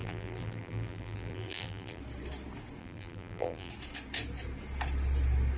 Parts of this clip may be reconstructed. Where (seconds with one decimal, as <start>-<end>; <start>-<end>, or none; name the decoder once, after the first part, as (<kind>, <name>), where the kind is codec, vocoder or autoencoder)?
0.0-2.0 (vocoder, BigVGAN v2); 2.8-3.7

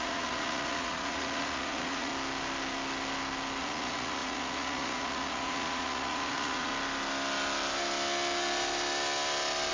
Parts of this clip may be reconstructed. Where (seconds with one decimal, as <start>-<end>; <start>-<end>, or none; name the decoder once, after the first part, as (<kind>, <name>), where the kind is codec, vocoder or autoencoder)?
0.0-2.1 (vocoder, Vocos); 3.6-6.7

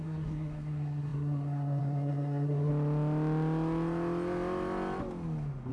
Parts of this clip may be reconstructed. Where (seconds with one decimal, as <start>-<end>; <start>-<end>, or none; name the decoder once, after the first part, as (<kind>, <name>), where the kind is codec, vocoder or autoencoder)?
0.0-2.7 (codec, SNAC)

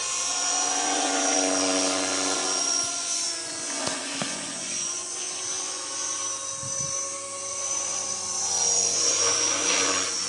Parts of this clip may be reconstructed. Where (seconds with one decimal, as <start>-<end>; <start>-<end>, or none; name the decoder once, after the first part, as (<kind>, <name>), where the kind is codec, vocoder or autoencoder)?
0.0-6.2 (vocoder, Vocos); 7.5-10.3

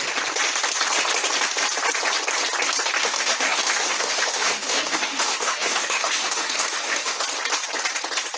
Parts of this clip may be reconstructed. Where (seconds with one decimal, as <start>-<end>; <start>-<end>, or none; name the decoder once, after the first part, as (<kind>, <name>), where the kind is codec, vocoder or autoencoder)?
3.0-7.2 (autoencoder, DAC-VAE)

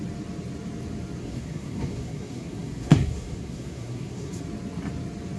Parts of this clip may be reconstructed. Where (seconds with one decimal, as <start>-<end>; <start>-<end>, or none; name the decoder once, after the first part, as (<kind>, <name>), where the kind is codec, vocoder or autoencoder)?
1.2-4.4 (codec, SNAC)